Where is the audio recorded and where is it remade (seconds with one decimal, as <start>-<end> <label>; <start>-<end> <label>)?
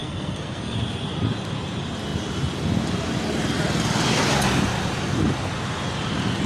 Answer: 0.0-0.8 remade; 0.8-6.5 recorded